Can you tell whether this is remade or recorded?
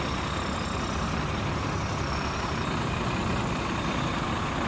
recorded